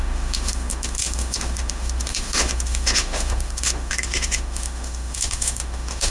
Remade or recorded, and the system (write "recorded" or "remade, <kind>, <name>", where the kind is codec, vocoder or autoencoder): remade, autoencoder, DAC-VAE